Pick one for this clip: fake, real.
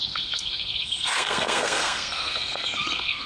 fake